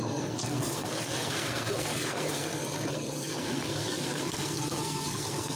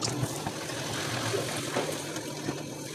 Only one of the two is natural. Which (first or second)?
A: second